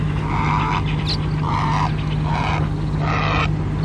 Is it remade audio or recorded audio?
recorded